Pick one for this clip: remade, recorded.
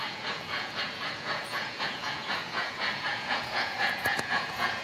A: remade